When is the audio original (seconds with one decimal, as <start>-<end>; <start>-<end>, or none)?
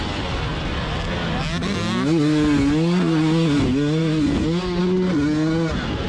0.0-6.1